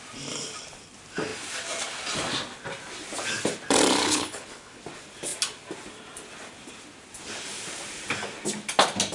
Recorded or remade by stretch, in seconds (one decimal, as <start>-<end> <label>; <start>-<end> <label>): 0.0-4.0 recorded; 4.0-4.8 remade; 4.8-9.1 recorded